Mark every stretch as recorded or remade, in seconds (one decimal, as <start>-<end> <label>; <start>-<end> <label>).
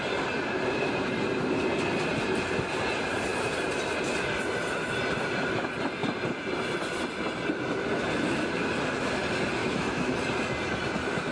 0.0-9.6 recorded; 9.6-10.2 remade; 10.2-11.3 recorded